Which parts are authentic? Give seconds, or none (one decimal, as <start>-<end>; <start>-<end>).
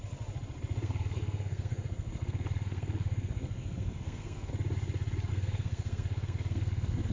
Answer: 0.0-0.8; 4.5-5.3